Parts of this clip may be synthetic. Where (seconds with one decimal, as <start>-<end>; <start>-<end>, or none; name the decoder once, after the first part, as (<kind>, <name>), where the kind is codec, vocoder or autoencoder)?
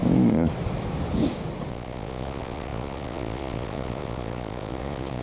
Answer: 1.7-5.2 (vocoder, Vocos)